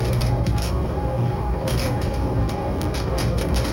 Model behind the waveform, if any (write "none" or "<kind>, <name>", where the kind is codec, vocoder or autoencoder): codec, DAC